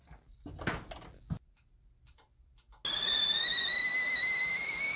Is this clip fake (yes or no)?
no